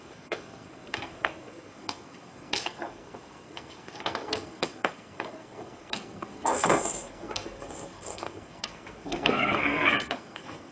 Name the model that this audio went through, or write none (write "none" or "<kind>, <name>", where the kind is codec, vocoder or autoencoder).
codec, SNAC